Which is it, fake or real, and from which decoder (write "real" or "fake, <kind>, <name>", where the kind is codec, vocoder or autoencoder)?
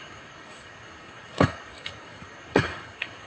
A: fake, codec, DAC